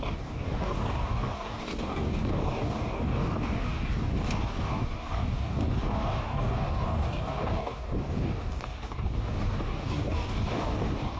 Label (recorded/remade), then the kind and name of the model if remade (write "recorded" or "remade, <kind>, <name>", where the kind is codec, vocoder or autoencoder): remade, codec, DAC